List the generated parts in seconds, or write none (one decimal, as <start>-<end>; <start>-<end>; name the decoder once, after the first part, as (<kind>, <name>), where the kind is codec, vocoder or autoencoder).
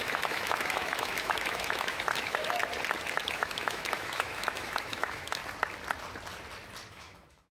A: 0.0-2.6 (autoencoder, DAC-VAE); 3.2-5.4; 6.9-7.5